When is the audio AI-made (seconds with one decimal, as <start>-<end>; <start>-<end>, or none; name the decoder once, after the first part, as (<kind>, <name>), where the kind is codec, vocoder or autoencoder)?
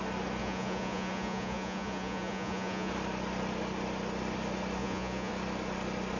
0.4-2.9 (vocoder, Vocos); 4.8-5.3